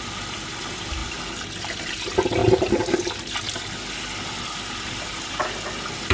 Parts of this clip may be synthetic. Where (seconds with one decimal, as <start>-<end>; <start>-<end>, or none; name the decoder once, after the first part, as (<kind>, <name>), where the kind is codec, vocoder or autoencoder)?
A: none